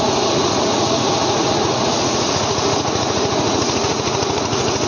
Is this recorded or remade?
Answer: remade